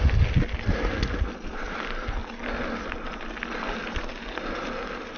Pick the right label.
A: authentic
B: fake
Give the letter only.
A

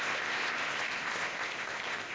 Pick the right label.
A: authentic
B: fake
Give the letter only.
B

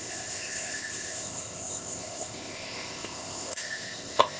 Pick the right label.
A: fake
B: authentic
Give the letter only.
A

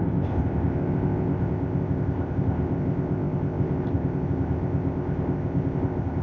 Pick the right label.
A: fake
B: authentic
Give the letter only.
A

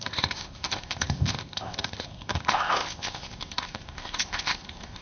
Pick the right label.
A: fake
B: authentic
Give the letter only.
A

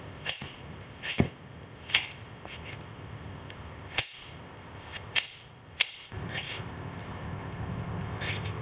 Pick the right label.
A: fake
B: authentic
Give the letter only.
A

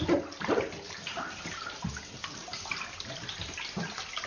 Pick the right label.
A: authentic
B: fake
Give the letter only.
A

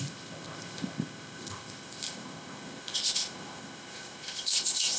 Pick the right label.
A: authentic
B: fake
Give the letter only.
B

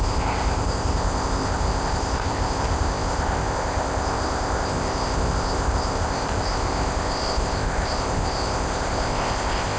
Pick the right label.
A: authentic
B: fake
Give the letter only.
B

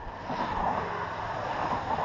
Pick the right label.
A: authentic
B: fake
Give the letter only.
A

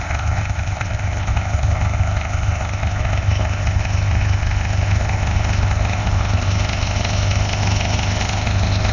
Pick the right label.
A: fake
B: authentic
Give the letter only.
A